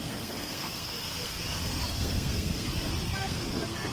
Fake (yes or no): yes